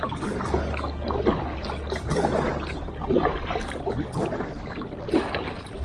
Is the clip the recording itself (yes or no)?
yes